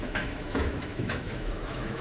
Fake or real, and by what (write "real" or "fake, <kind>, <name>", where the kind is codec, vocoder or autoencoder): fake, autoencoder, DAC-VAE